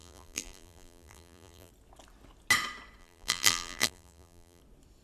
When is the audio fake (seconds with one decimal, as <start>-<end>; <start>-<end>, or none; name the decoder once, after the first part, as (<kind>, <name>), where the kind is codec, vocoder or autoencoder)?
0.0-1.7 (vocoder, BigVGAN v2); 3.0-4.6